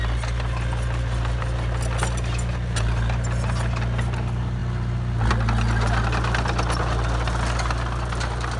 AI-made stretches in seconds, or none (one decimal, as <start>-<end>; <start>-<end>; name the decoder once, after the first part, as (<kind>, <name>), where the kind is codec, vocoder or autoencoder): none